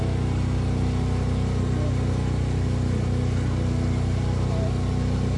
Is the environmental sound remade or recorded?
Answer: recorded